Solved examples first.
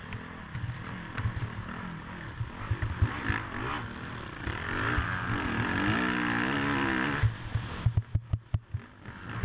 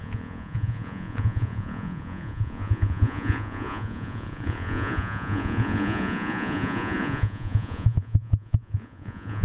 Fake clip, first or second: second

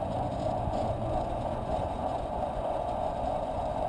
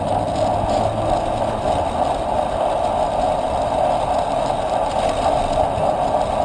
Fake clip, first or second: first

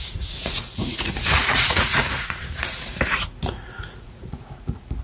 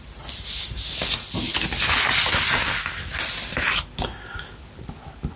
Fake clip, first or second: first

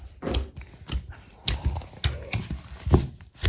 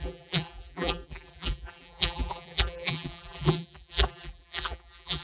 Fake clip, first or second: second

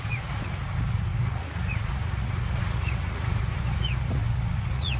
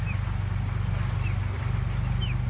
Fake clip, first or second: first